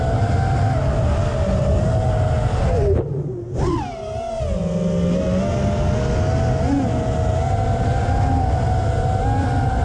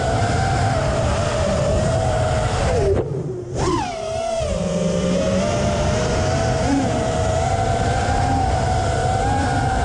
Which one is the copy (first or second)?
second